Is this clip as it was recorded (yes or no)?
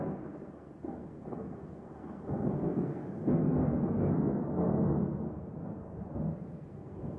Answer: no